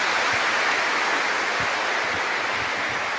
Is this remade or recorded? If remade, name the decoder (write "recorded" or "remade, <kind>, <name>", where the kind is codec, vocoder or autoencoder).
recorded